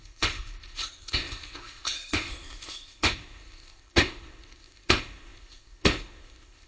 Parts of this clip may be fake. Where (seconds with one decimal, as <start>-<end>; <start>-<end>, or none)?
0.0-6.7